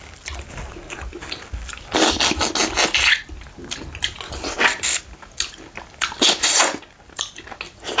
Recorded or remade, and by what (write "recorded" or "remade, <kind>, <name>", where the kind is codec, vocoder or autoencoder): recorded